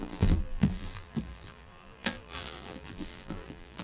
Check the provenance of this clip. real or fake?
fake